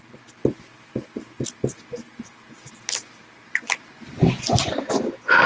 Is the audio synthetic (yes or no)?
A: no